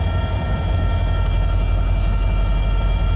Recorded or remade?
recorded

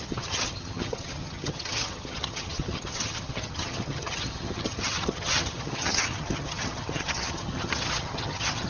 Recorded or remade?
remade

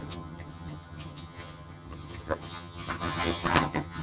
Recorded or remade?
remade